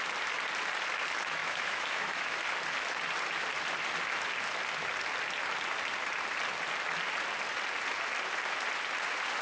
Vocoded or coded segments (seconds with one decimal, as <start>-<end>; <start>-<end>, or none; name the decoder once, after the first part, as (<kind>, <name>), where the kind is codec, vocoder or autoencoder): 1.4-2.4 (autoencoder, DAC-VAE)